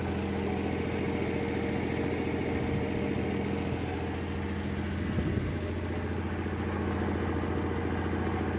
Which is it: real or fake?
real